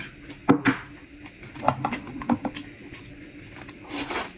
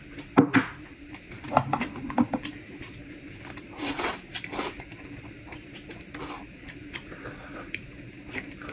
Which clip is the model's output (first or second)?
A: second